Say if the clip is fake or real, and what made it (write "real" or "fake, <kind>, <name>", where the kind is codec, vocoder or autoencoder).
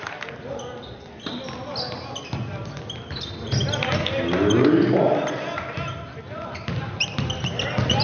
real